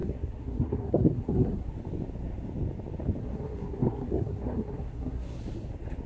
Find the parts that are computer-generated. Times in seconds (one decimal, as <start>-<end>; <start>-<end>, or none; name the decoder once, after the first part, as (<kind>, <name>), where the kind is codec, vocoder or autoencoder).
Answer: 0.0-1.7 (codec, SNAC); 3.2-5.4